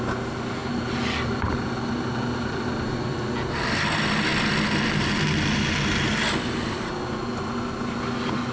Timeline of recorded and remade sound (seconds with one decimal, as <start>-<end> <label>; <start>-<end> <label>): 0.0-8.5 recorded